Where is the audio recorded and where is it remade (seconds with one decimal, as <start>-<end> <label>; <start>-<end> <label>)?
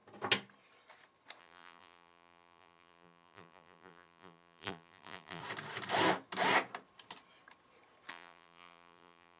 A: 0.0-1.4 recorded; 1.4-5.4 remade; 5.4-8.1 recorded; 8.1-9.4 remade